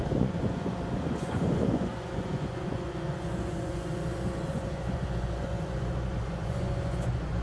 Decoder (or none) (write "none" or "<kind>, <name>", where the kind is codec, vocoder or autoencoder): vocoder, Vocos